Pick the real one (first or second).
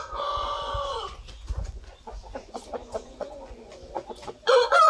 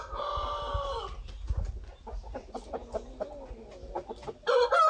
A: second